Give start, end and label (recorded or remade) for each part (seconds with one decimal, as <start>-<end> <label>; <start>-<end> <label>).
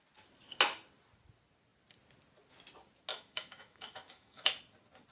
0.0-3.1 recorded; 3.1-4.5 remade; 4.5-5.1 recorded